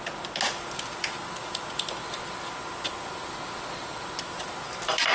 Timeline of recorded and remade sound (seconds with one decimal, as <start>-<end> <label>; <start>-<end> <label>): 0.0-5.1 recorded